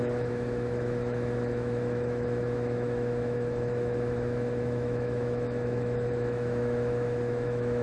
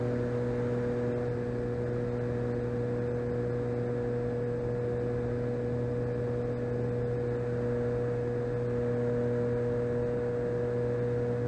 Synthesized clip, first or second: first